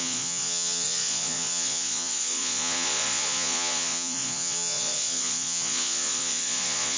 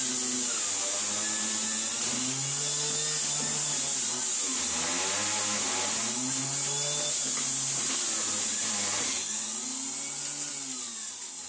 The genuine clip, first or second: second